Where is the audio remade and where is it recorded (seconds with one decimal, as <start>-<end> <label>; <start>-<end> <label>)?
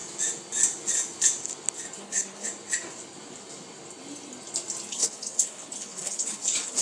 0.0-2.0 recorded; 2.0-2.5 remade; 2.5-4.9 recorded; 4.9-6.8 remade